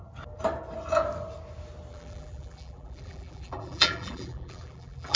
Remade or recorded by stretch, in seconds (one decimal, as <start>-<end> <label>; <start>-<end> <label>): 0.0-1.9 recorded; 1.9-5.2 remade